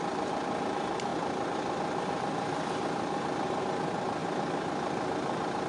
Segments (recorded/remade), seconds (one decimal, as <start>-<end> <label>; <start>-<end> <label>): 0.0-1.1 recorded; 1.1-3.6 remade; 3.6-4.2 recorded; 4.2-5.7 remade